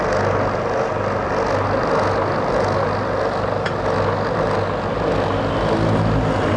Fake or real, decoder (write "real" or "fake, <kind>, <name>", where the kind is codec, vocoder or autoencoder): real